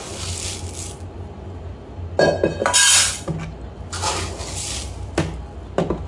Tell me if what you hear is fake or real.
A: real